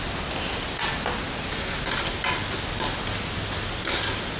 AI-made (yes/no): no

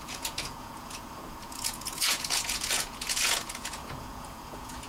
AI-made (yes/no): yes